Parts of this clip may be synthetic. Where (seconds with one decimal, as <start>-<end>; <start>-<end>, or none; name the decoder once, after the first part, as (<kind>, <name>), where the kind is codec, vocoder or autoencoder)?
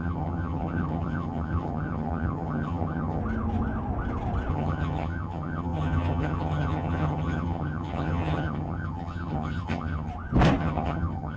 0.0-3.2 (vocoder, HiFi-GAN); 4.5-10.1; 10.6-11.4